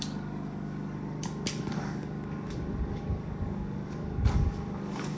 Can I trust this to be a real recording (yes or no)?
no